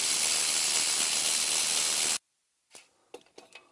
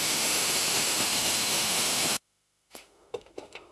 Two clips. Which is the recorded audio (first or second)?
first